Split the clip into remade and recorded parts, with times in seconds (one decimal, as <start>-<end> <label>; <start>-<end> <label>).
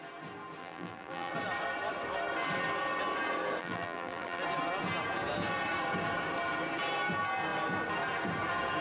0.0-0.6 recorded; 0.6-1.3 remade; 1.3-3.6 recorded; 3.6-4.4 remade; 4.4-8.8 recorded